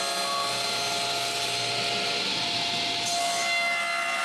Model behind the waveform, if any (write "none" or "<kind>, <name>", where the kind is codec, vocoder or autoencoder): none